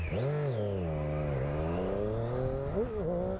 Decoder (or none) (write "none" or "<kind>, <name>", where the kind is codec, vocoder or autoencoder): none